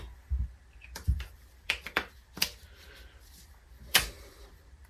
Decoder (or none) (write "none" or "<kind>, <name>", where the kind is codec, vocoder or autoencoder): vocoder, BigVGAN v2